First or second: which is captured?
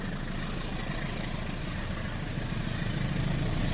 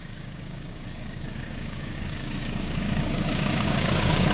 first